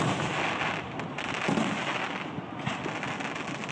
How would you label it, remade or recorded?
recorded